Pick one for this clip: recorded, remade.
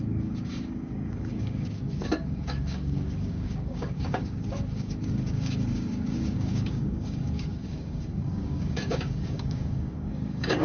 remade